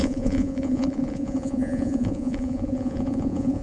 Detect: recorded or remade remade